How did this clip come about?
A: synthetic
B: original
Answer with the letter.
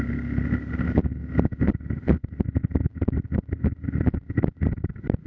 B